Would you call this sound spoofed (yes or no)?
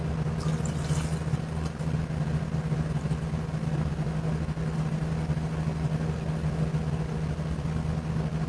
no